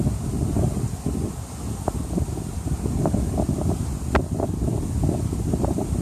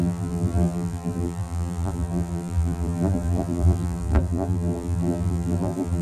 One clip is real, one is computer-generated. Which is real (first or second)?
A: first